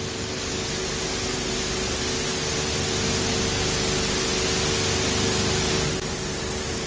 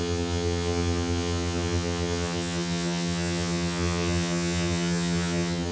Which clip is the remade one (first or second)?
second